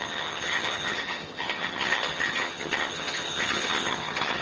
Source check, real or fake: fake